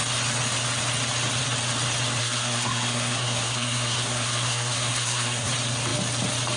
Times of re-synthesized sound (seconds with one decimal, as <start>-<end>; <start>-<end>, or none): 2.2-5.5